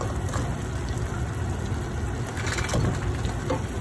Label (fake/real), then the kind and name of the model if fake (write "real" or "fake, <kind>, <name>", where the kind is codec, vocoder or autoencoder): real